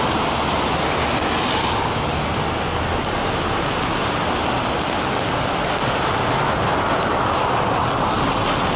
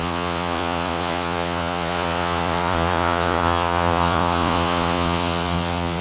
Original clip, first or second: first